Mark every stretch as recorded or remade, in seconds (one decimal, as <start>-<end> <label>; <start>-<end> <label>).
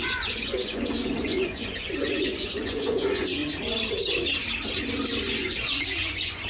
0.0-3.4 remade; 3.4-5.4 recorded; 5.4-6.5 remade